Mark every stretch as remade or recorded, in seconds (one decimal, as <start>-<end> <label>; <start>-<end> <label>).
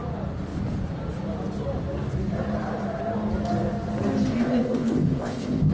0.0-4.3 recorded; 4.3-5.7 remade